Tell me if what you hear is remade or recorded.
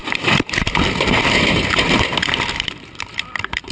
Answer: remade